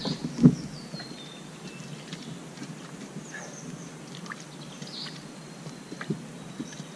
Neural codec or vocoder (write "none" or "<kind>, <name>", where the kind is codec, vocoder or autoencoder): none